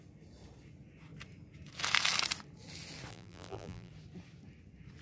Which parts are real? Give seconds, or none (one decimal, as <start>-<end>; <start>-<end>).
0.0-3.1; 3.9-5.0